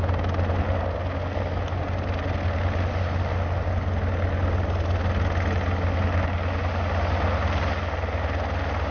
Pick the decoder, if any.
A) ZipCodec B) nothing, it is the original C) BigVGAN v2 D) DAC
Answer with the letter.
B